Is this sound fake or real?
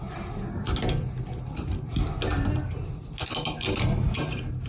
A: real